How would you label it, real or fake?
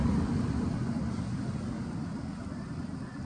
real